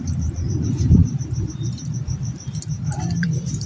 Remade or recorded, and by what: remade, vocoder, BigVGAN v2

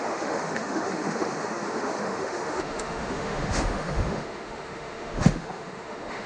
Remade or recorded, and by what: remade, autoencoder, DAC-VAE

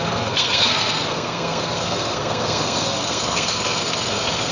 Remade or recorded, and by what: remade, codec, SNAC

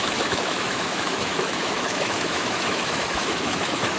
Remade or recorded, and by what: remade, autoencoder, DAC-VAE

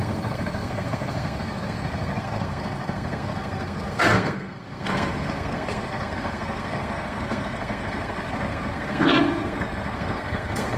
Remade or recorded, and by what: remade, codec, SNAC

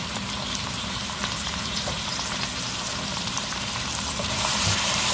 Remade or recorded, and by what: remade, vocoder, BigVGAN v2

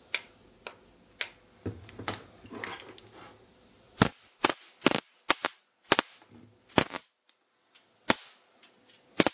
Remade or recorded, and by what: recorded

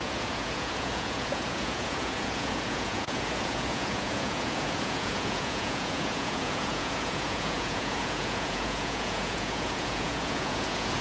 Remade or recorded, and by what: remade, vocoder, Vocos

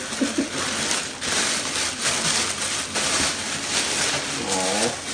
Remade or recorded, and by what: recorded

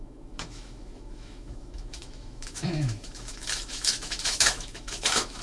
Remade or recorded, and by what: remade, autoencoder, DAC-VAE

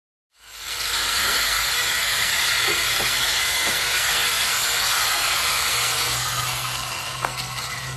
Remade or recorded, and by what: remade, codec, SNAC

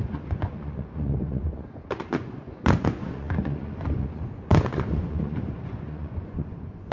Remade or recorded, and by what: remade, vocoder, Vocos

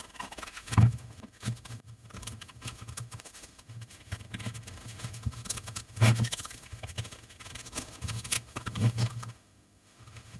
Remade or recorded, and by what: remade, autoencoder, DAC-VAE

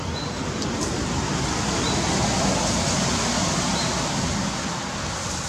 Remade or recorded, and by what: recorded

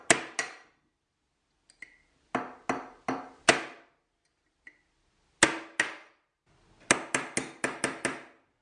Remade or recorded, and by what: recorded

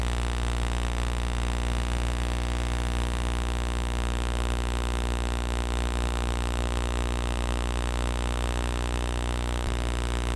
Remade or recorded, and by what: remade, vocoder, BigVGAN v2